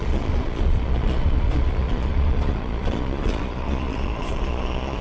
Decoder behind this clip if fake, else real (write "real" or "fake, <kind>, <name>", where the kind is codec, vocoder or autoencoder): fake, vocoder, Vocos